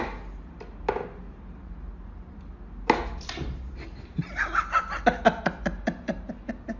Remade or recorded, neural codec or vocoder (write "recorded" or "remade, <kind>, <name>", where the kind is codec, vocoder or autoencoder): recorded